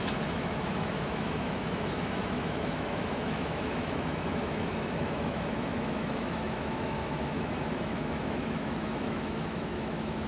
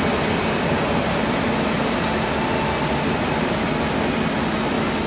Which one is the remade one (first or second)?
first